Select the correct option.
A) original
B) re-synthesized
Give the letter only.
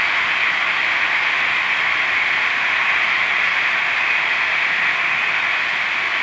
A